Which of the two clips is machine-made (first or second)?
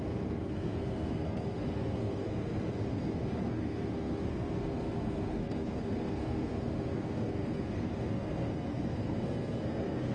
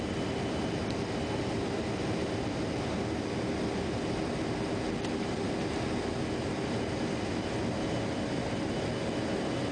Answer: first